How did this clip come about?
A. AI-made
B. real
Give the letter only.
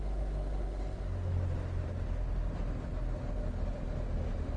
B